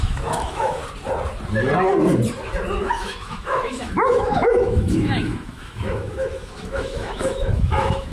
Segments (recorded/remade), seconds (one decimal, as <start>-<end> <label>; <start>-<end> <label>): 0.0-0.8 remade; 0.8-2.8 recorded; 2.8-8.1 remade